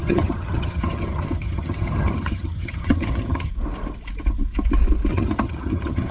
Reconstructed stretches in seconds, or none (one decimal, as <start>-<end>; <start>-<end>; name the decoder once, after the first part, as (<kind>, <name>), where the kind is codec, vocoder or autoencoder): 0.0-3.5 (vocoder, HiFi-GAN); 5.1-6.1